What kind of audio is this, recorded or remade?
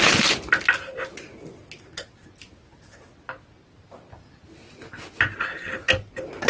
recorded